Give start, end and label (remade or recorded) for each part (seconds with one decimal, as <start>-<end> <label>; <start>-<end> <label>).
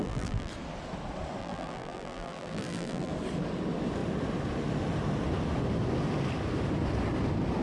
0.0-0.5 remade; 0.5-1.4 recorded; 1.4-3.1 remade; 3.1-7.6 recorded